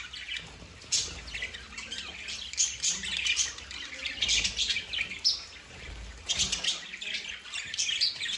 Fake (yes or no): no